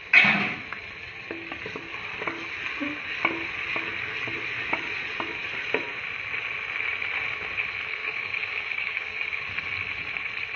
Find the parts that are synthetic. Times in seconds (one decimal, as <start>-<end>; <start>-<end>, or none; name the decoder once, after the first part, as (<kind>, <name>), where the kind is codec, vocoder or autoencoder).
8.0-9.4 (codec, DAC)